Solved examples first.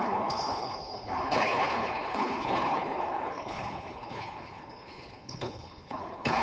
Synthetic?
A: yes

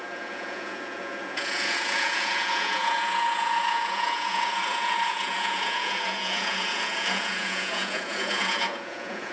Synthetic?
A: yes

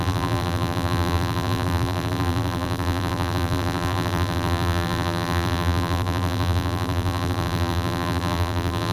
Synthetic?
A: yes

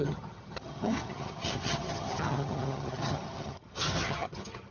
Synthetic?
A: yes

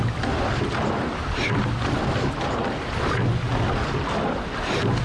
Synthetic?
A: no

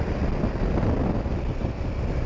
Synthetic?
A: no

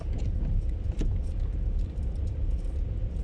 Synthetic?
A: no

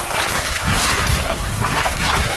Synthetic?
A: yes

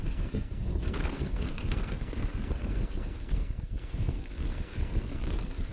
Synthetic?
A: yes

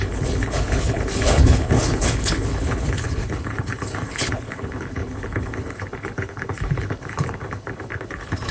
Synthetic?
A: yes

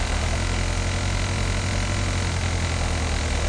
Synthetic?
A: no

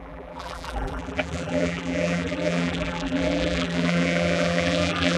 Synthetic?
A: yes